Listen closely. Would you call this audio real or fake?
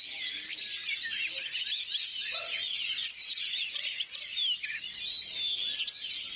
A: fake